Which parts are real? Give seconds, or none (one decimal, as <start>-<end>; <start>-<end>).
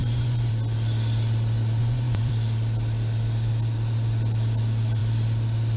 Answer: 0.5-1.8; 2.3-5.8